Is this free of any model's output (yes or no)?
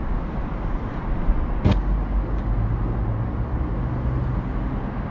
yes